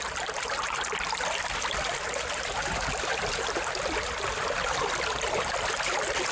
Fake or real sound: fake